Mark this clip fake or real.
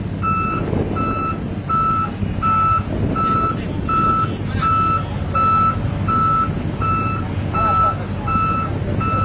real